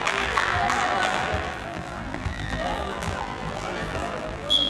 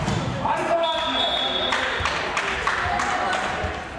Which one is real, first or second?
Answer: second